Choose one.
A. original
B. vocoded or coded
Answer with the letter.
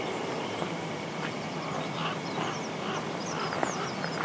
A